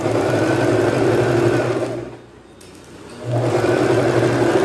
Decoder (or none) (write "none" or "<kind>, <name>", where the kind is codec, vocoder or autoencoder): none